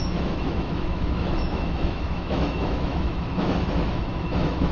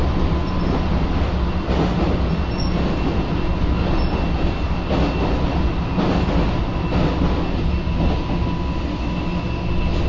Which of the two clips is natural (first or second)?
second